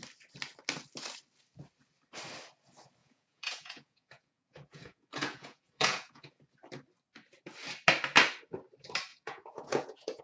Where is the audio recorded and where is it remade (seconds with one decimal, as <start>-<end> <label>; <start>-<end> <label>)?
0.0-3.0 recorded; 3.0-6.4 remade; 6.4-9.1 recorded; 9.1-10.2 remade